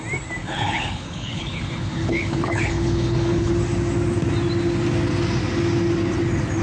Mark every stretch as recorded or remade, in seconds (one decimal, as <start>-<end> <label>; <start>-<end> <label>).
0.0-0.4 recorded; 0.4-3.5 remade; 3.5-6.6 recorded